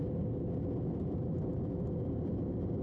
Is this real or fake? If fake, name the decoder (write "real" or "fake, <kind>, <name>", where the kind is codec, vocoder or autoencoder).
real